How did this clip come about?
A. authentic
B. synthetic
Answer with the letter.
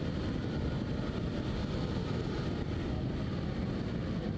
A